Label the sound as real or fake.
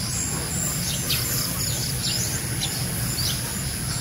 real